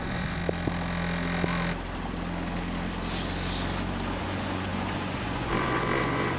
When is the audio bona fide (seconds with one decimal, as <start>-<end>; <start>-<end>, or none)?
0.4-4.2